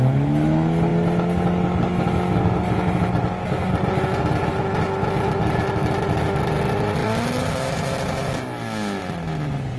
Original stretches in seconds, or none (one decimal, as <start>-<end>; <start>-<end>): 0.0-9.8